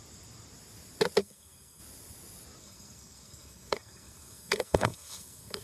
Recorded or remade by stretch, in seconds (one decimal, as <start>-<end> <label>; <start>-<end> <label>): 0.0-1.2 recorded; 1.2-1.8 remade; 1.8-2.6 recorded; 2.6-5.6 remade